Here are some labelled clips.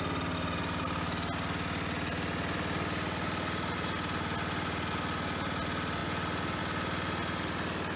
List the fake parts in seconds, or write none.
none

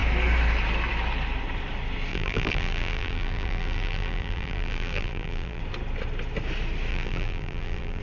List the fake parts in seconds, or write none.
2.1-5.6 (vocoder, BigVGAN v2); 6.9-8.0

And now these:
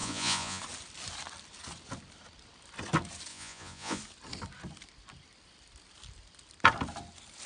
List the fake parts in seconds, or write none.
0.0-0.6 (vocoder, Vocos); 3.3-4.0